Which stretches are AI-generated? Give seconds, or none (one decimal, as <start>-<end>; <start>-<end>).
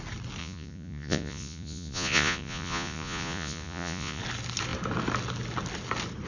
0.4-4.2